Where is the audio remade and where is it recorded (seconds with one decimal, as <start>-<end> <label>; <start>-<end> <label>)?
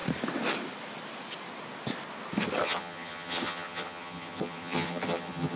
0.0-2.6 recorded; 2.6-5.6 remade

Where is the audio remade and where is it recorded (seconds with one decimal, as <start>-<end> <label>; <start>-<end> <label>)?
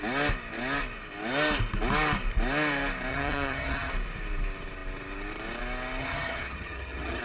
0.0-3.1 recorded; 3.1-3.9 remade; 3.9-6.0 recorded; 6.0-7.2 remade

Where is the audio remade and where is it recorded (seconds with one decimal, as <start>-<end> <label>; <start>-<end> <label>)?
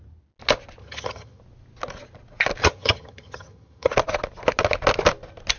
0.0-0.8 recorded; 0.8-1.4 remade; 1.4-2.6 recorded; 2.6-3.9 remade; 3.9-5.6 recorded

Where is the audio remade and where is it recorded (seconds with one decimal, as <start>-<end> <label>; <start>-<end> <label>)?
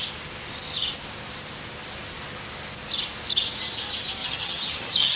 0.0-4.2 recorded; 4.2-5.2 remade